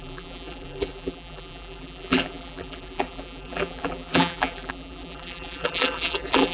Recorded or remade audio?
remade